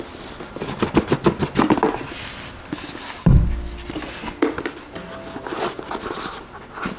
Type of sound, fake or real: real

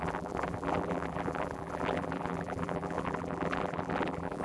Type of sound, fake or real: fake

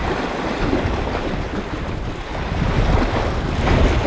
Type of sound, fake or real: real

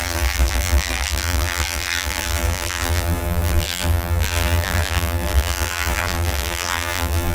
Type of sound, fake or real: fake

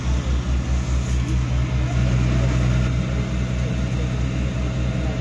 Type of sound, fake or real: real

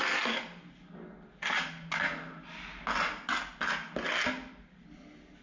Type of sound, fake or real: real